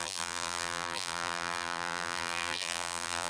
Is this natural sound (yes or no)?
no